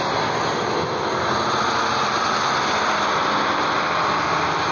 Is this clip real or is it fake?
real